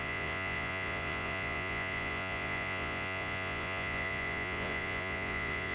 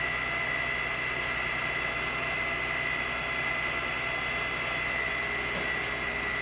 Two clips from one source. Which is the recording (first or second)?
second